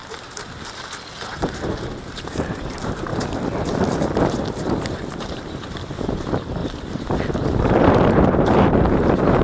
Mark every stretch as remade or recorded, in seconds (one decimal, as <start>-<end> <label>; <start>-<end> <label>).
0.0-1.3 recorded; 1.3-3.1 remade; 3.1-4.7 recorded; 4.7-6.6 remade; 6.6-7.9 recorded; 7.9-9.4 remade